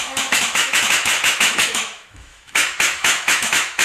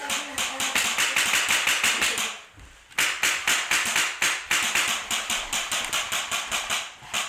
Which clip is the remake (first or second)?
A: first